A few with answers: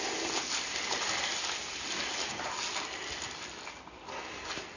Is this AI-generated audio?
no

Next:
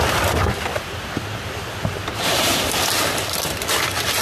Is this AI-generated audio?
no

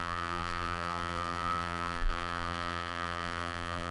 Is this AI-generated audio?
yes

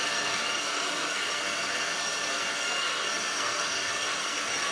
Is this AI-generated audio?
yes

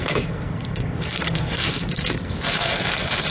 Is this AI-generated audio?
yes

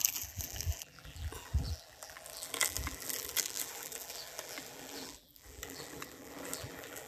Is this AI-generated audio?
yes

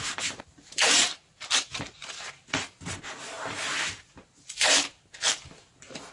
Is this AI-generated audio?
yes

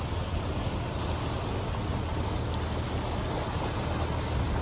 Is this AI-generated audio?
no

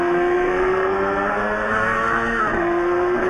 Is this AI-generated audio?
yes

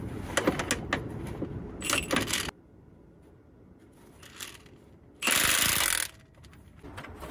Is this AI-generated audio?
no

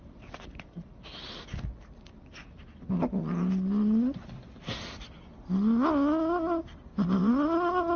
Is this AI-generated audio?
no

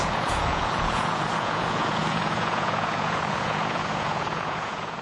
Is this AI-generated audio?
yes